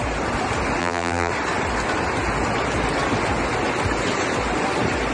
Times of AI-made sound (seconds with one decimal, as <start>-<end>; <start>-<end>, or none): 0.8-1.3